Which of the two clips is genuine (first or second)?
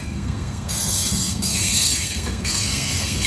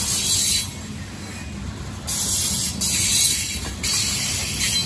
second